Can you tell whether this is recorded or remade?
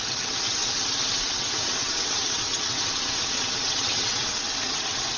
remade